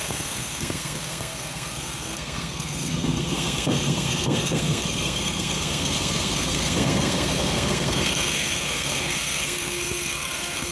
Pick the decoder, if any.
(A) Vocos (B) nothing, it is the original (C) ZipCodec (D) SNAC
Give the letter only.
D